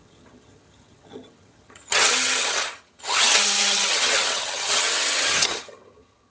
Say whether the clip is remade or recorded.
remade